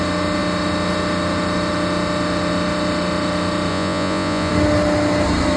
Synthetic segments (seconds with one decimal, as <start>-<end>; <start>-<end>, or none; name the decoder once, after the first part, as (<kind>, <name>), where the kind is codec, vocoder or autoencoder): 3.7-4.5 (vocoder, Vocos)